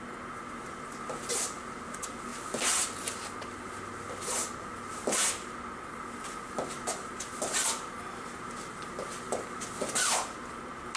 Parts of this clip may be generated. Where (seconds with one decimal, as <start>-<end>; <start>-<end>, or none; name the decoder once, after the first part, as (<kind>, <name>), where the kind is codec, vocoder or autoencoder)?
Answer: none